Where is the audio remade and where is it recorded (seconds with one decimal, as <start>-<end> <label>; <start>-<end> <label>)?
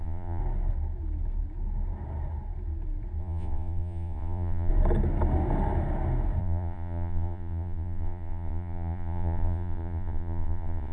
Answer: 0.0-0.4 remade; 0.4-3.2 recorded; 3.2-4.7 remade; 4.7-6.4 recorded; 6.4-10.9 remade